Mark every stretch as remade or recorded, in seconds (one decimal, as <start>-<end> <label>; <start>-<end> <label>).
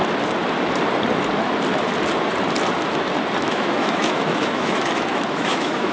0.0-3.4 recorded; 3.4-5.9 remade